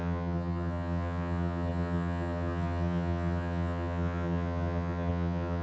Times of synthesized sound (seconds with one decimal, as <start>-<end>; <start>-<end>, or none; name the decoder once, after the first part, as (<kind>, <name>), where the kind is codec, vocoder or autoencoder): 0.0-5.6 (vocoder, HiFi-GAN)